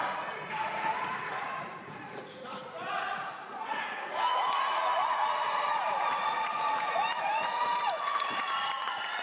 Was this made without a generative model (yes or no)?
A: no